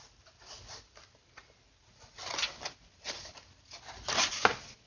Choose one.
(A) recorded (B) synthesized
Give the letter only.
A